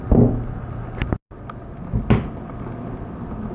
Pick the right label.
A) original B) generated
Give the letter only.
A